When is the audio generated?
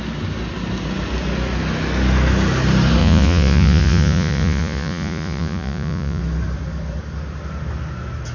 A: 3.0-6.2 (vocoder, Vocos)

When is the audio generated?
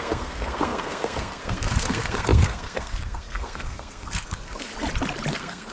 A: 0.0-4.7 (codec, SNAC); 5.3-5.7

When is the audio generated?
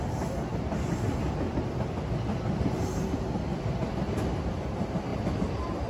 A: none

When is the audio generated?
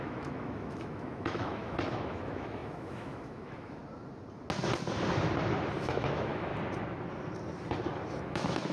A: 0.0-3.8 (autoencoder, DAC-VAE); 5.8-6.5; 8.1-8.7